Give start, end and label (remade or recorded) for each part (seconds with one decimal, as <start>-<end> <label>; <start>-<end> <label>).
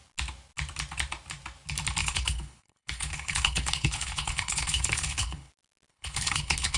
0.0-2.0 recorded; 2.0-5.5 remade; 5.5-5.9 recorded; 5.9-6.8 remade